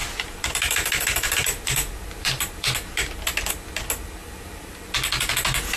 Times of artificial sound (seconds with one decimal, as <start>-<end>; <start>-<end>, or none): 0.0-3.5; 4.2-4.8